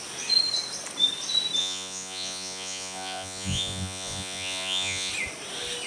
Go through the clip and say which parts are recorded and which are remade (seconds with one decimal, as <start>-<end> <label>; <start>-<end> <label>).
0.0-1.6 recorded; 1.6-5.1 remade; 5.1-5.9 recorded

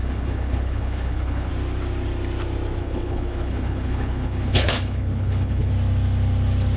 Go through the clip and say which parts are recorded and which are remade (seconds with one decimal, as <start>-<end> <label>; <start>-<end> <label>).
0.0-1.5 remade; 1.5-2.8 recorded; 2.8-5.7 remade; 5.7-6.8 recorded

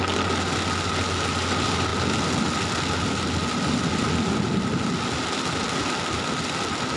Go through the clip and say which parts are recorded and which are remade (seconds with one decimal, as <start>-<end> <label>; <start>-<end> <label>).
0.0-7.0 recorded

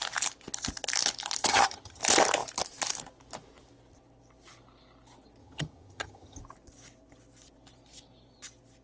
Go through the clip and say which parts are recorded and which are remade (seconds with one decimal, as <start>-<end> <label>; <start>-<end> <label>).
0.0-1.4 recorded; 1.4-2.0 remade; 2.0-5.4 recorded; 5.4-6.4 remade; 6.4-8.8 recorded

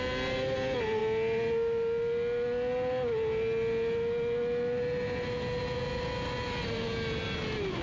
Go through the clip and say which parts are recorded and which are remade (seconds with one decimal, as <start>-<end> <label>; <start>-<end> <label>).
0.0-7.8 recorded

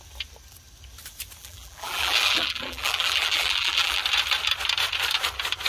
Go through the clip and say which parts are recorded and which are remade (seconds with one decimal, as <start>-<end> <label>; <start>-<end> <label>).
0.0-1.4 recorded; 1.4-4.0 remade; 4.0-5.7 recorded